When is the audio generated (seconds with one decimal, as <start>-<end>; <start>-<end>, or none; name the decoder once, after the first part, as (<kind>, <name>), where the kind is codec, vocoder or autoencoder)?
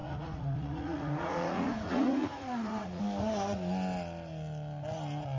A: 0.0-3.0 (vocoder, Vocos)